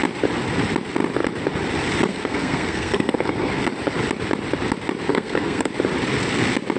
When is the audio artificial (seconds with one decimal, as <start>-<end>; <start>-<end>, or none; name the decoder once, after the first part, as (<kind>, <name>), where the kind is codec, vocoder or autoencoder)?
2.1-3.6 (codec, SNAC); 5.1-5.7